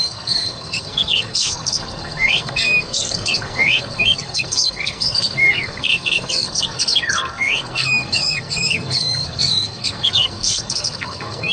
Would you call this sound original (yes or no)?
no